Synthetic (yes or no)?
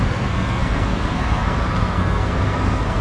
yes